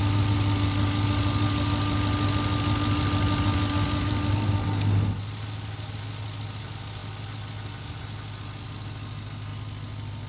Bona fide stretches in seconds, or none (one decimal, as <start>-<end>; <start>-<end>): 0.0-10.3